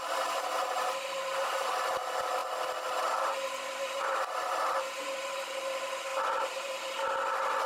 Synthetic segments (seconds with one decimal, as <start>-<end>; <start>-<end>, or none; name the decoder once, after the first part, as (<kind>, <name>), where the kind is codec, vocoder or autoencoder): none